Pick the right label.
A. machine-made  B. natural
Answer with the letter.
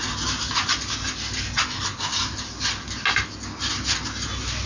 B